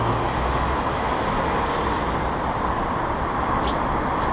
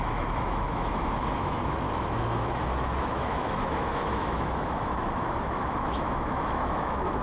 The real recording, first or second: first